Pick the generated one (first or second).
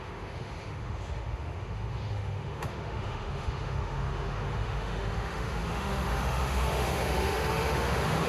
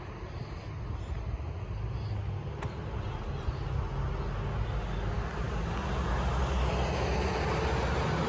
first